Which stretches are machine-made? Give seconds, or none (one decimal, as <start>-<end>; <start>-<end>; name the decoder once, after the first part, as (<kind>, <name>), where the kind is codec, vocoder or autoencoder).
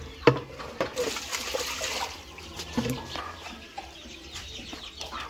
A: none